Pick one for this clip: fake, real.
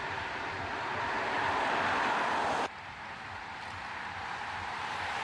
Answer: fake